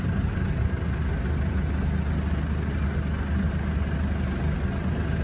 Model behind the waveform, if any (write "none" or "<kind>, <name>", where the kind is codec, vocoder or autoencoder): none